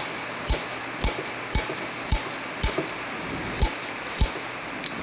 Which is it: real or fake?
real